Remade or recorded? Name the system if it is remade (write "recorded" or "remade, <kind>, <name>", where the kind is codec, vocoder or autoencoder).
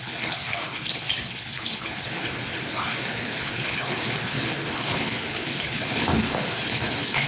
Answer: remade, codec, HILCodec